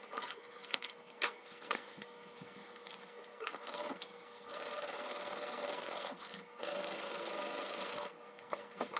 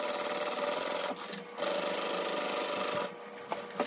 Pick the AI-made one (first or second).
first